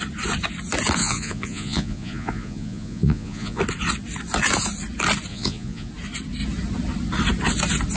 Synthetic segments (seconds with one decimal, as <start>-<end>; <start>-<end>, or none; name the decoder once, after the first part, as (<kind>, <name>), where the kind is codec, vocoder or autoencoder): 1.0-3.6 (vocoder, Vocos); 5.3-5.9